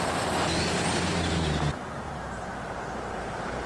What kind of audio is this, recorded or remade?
remade